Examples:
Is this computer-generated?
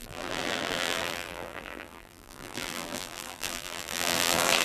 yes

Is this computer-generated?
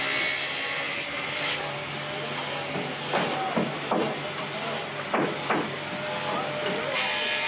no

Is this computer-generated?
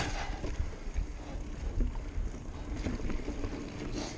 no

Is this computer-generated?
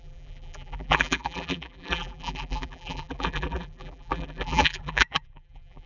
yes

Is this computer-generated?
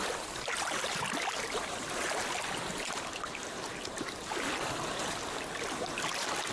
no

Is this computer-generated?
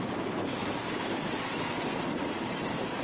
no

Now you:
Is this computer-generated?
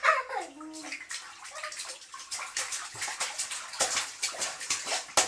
no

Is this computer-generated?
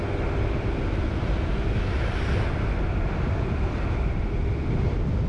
no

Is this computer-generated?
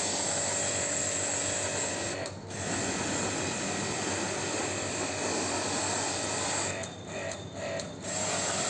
no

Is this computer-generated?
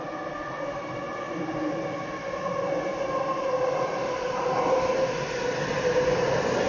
no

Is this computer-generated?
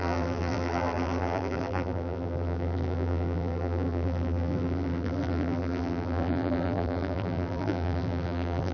yes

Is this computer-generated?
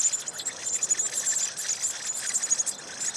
no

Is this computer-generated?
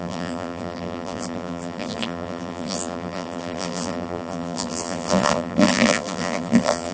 yes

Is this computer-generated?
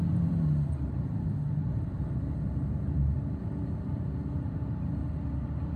yes